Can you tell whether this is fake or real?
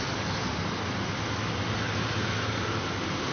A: real